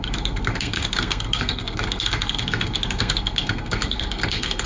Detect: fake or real fake